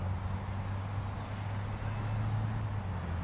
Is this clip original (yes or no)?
yes